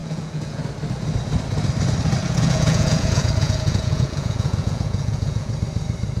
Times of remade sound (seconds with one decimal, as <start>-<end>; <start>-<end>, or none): 0.0-0.6; 2.2-5.5